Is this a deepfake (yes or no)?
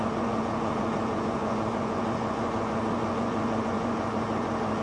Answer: yes